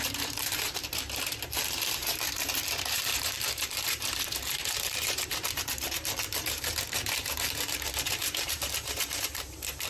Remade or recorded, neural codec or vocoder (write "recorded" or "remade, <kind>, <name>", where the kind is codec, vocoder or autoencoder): remade, vocoder, BigVGAN v2